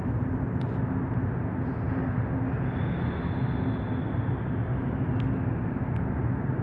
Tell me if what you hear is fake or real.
real